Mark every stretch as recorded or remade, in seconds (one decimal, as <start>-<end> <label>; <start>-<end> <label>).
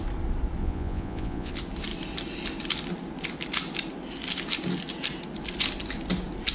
0.0-0.6 recorded; 0.6-1.5 remade; 1.5-6.5 recorded